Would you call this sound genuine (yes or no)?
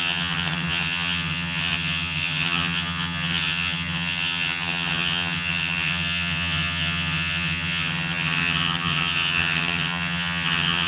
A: no